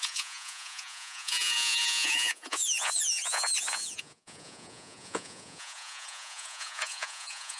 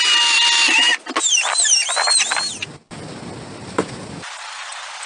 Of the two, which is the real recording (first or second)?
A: second